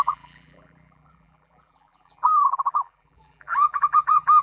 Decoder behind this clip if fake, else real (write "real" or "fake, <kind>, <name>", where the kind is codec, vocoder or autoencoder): fake, vocoder, BigVGAN v2